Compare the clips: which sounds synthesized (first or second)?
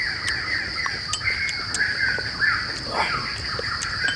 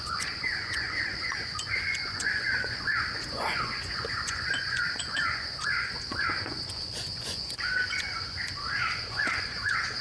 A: second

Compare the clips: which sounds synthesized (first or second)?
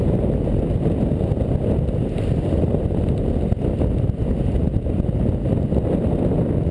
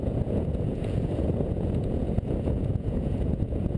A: second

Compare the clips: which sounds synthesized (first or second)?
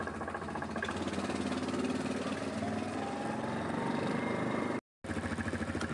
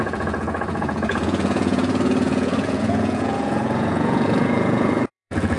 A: second